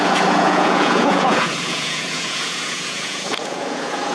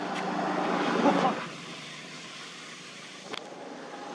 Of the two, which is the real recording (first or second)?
second